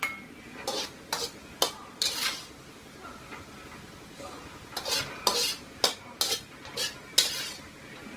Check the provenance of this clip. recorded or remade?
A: recorded